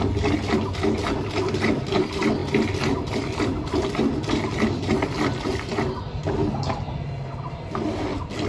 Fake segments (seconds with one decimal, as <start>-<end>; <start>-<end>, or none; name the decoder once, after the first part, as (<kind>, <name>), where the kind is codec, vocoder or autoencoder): none